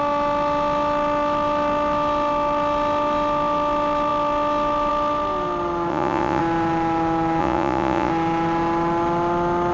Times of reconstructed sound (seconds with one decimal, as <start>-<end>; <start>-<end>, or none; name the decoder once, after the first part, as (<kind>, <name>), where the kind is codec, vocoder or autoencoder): 5.9-6.4 (vocoder, Vocos); 7.4-8.1